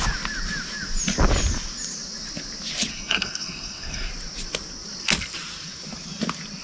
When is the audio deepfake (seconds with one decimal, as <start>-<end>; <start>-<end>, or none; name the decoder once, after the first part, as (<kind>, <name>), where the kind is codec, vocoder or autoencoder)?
2.9-4.1 (codec, SNAC)